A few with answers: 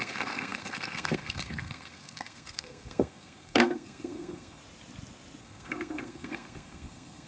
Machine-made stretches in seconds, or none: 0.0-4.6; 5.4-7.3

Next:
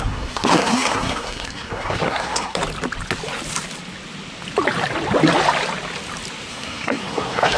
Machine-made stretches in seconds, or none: 0.0-2.6; 6.5-7.6

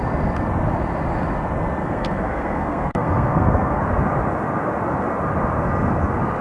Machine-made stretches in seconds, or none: 1.8-3.8

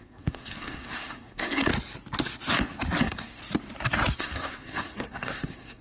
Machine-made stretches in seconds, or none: 0.0-1.7; 3.0-3.4; 4.2-5.8